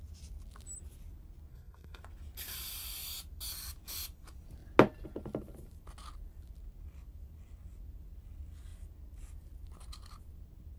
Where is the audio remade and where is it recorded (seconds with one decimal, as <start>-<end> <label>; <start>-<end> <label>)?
0.0-1.5 recorded; 1.5-2.0 remade; 2.0-10.8 recorded